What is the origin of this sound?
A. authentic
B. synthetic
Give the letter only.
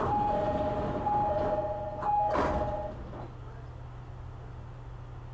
A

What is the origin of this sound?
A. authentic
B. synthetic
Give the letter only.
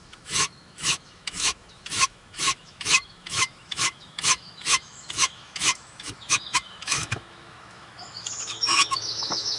B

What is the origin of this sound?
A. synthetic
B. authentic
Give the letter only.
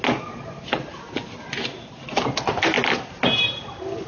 B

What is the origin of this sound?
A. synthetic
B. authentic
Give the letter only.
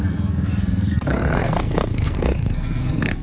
A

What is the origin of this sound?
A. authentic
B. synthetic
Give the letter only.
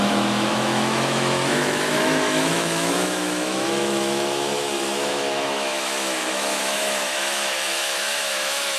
B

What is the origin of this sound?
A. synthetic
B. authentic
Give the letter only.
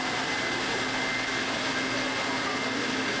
B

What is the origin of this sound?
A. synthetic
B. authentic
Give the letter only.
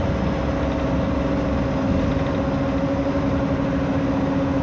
B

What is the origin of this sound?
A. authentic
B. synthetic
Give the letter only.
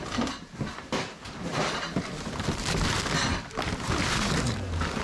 A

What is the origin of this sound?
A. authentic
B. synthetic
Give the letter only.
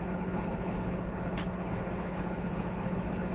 B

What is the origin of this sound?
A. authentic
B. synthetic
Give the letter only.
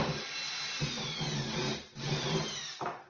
A